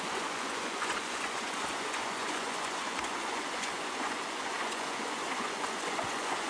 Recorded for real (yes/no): no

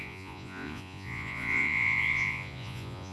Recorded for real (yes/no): no